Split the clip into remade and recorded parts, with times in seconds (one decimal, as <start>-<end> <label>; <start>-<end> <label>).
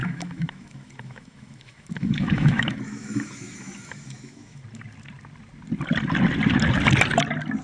0.0-4.6 remade; 4.6-7.6 recorded